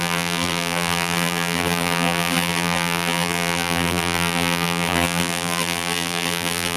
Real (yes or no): no